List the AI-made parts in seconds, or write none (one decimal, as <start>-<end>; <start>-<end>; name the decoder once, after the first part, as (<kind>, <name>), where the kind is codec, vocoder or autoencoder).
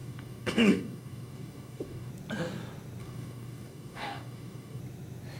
0.0-2.1 (codec, DAC); 3.0-4.8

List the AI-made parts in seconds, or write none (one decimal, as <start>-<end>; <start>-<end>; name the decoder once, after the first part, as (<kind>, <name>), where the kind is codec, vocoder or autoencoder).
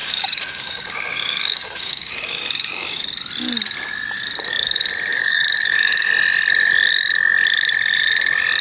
0.0-3.0 (codec, DAC); 5.1-6.1